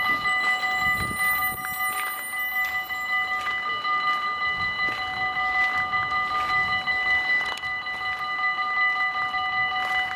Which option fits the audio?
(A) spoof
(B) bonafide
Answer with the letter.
B